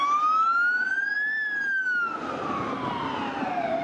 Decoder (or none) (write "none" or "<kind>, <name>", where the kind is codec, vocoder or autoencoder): none